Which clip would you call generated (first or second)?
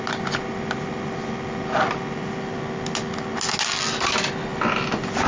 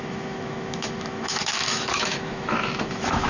second